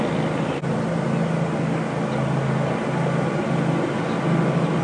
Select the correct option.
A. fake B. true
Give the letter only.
B